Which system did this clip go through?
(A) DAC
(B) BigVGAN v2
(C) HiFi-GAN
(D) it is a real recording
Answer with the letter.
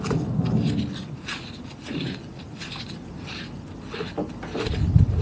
D